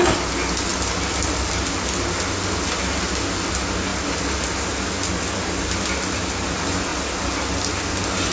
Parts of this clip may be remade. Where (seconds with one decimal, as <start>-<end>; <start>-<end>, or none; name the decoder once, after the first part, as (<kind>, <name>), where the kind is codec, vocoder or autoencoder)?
none